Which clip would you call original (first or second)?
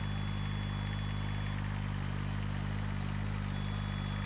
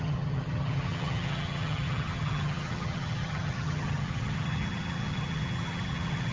first